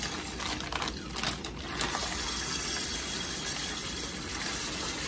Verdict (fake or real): real